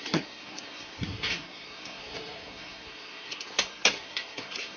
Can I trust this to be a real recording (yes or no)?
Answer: no